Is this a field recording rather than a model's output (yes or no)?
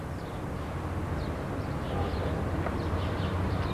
yes